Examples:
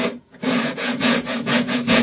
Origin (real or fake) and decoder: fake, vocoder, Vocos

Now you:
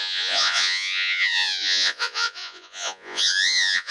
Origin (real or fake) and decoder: fake, vocoder, Vocos